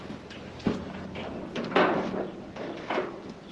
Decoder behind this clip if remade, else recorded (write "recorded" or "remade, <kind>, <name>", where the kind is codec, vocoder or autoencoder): recorded